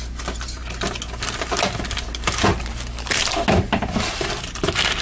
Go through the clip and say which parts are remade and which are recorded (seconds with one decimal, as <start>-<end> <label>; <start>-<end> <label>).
0.0-5.0 recorded

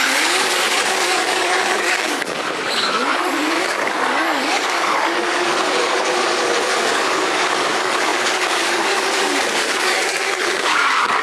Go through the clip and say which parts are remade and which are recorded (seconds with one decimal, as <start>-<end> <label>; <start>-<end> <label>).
0.0-11.2 remade

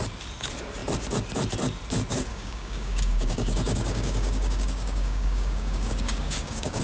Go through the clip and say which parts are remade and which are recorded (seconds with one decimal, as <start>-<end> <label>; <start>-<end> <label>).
0.0-2.3 recorded; 2.3-6.8 remade

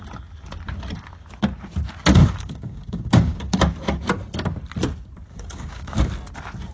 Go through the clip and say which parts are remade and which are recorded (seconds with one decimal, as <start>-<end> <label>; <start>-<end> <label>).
0.0-2.2 recorded; 2.2-3.6 remade; 3.6-5.3 recorded; 5.3-6.0 remade; 6.0-6.7 recorded

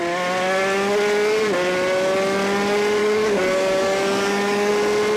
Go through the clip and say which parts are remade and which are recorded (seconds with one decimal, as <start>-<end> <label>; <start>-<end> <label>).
0.0-3.0 recorded; 3.0-4.7 remade; 4.7-5.2 recorded

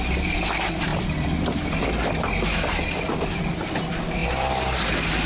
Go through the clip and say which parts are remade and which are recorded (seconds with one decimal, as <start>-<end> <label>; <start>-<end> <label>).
0.0-5.3 recorded

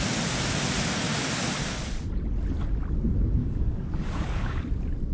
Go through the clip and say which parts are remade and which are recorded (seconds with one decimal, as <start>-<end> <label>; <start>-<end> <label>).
0.0-3.4 recorded; 3.4-4.6 remade; 4.6-5.1 recorded